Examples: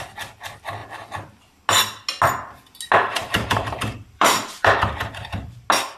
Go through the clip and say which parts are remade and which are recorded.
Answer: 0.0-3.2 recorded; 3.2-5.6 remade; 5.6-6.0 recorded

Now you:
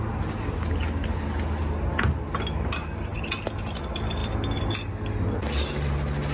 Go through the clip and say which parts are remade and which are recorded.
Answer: 0.0-6.3 recorded

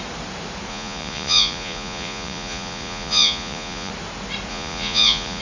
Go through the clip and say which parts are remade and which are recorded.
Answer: 0.0-0.7 recorded; 0.7-3.9 remade; 3.9-4.5 recorded; 4.5-5.4 remade

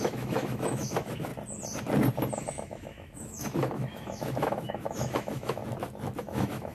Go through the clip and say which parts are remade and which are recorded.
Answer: 0.0-1.3 remade; 1.3-2.5 recorded; 2.5-5.6 remade; 5.6-6.2 recorded; 6.2-6.7 remade

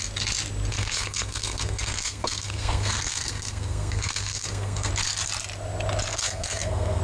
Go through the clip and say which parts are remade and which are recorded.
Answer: 0.0-0.7 recorded; 0.7-4.9 remade; 4.9-6.1 recorded; 6.1-7.0 remade

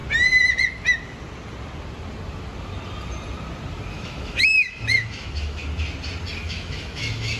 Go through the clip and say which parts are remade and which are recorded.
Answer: 0.0-3.9 recorded; 3.9-5.6 remade; 5.6-6.4 recorded; 6.4-7.4 remade

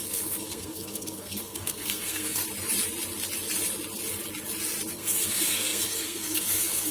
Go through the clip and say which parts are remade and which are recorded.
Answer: 0.0-2.4 remade; 2.4-4.9 recorded; 4.9-6.9 remade